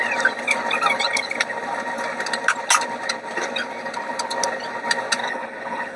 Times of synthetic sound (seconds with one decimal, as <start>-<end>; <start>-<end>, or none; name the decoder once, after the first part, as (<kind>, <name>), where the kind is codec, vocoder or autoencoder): 5.2-6.0 (codec, HILCodec)